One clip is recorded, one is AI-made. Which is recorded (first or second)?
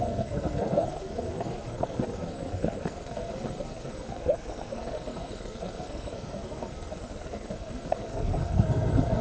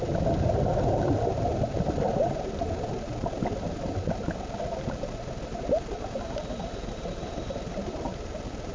second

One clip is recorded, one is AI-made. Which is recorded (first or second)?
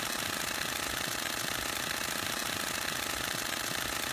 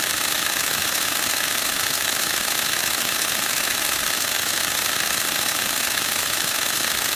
first